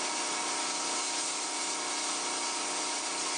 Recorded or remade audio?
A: recorded